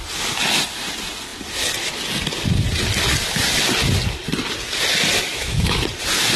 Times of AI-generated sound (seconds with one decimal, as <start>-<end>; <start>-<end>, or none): 5.3-5.8

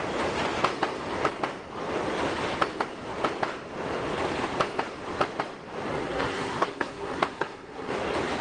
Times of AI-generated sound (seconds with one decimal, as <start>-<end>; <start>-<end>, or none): 5.9-7.9